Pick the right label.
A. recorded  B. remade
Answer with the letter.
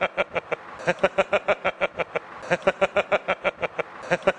A